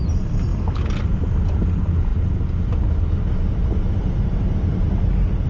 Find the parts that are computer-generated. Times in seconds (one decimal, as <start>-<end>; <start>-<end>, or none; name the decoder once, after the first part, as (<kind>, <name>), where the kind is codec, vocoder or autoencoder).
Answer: none